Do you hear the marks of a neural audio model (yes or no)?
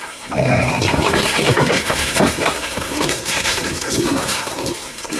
yes